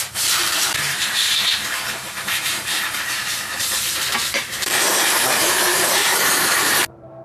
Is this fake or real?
fake